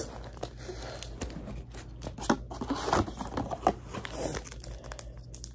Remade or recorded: recorded